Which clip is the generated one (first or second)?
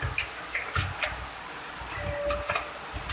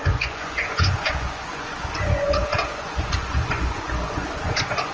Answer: second